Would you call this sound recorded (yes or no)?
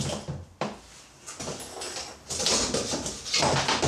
yes